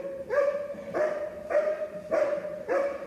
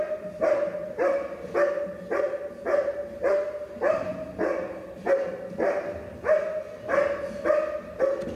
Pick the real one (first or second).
second